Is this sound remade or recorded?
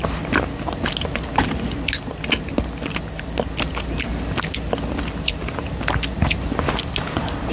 recorded